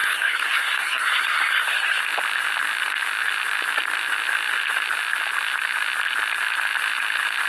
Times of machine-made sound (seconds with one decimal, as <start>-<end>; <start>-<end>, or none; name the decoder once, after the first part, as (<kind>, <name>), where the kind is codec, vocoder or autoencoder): 0.0-2.0 (codec, SNAC)